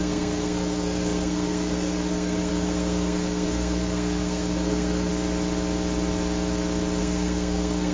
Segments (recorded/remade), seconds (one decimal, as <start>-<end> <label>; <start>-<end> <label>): 0.0-5.1 remade; 5.1-7.0 recorded; 7.0-7.9 remade